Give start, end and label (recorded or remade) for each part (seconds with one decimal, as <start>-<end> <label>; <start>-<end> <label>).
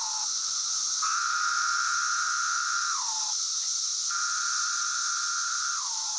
0.0-6.2 remade